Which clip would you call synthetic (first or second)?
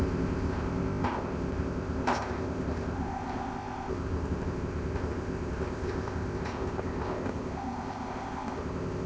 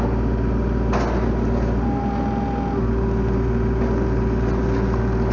first